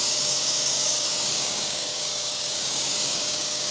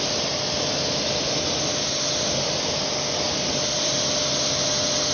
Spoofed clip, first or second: first